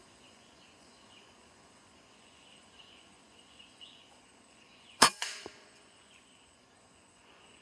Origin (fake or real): fake